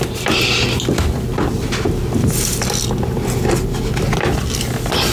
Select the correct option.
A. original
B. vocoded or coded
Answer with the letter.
A